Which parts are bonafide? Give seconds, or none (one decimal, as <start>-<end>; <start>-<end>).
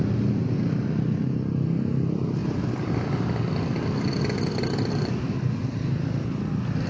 0.0-6.9